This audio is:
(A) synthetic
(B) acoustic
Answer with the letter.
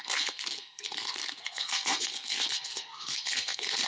A